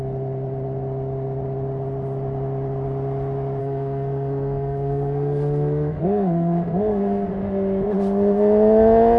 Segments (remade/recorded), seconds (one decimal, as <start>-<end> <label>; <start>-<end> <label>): 0.0-3.6 recorded; 3.6-7.3 remade; 7.3-9.2 recorded